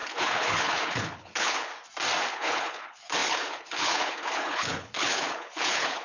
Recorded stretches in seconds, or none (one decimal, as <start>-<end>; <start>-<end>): 1.7-2.3